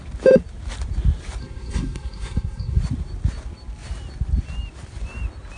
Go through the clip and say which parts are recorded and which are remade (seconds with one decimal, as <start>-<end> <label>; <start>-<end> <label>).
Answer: 0.0-1.4 recorded; 1.4-2.8 remade; 2.8-5.6 recorded